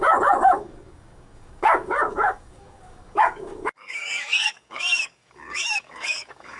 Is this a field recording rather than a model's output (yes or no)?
no